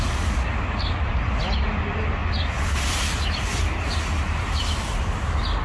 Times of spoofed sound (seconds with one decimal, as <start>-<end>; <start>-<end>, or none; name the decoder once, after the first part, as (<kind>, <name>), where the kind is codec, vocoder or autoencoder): none